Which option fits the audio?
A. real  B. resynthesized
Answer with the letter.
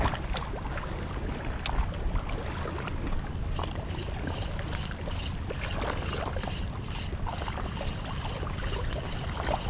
A